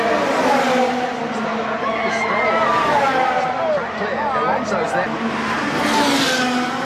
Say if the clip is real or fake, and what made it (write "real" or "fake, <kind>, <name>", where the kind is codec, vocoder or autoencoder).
real